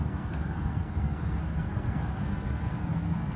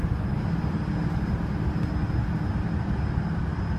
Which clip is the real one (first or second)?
second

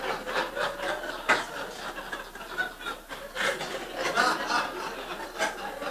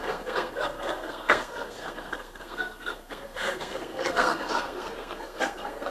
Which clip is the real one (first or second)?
first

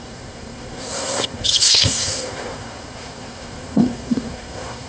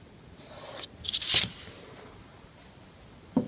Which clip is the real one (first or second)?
second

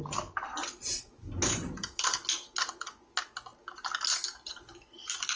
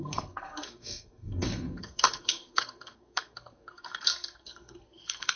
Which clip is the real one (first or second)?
first